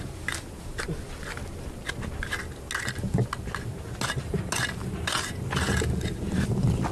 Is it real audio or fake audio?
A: real